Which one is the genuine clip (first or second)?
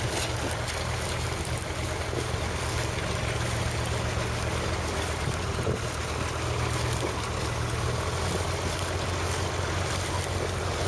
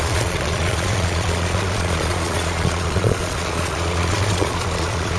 first